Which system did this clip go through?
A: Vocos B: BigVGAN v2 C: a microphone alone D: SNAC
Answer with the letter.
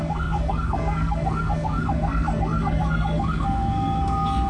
D